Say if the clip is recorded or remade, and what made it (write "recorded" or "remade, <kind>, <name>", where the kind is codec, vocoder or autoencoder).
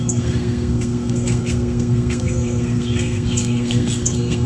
remade, codec, SNAC